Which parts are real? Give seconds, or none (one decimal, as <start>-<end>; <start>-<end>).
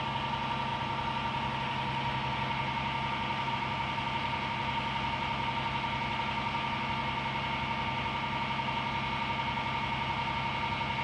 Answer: 0.0-11.0